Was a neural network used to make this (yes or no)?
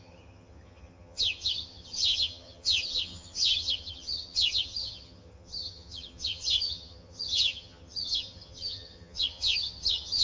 yes